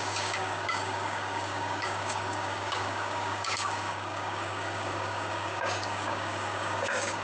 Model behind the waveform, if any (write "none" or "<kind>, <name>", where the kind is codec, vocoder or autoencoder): codec, DAC